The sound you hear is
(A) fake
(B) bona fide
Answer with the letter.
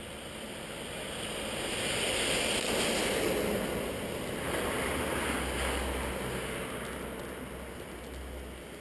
B